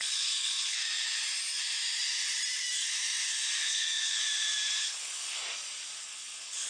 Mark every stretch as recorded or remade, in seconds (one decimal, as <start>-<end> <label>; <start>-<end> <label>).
0.0-0.8 remade; 0.8-3.6 recorded; 3.6-4.2 remade; 4.2-4.8 recorded; 4.8-5.4 remade; 5.4-6.0 recorded; 6.0-6.7 remade